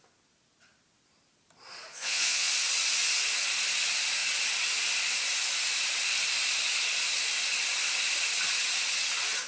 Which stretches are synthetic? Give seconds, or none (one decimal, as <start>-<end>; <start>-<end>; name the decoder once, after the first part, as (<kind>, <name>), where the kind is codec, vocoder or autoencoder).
1.9-2.5 (vocoder, Vocos)